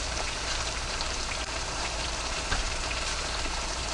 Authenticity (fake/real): fake